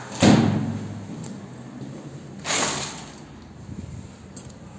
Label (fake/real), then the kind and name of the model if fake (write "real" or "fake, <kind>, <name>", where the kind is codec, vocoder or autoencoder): real